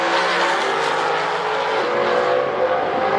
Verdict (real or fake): real